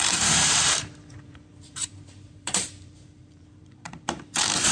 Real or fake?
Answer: fake